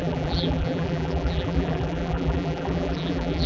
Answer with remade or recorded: remade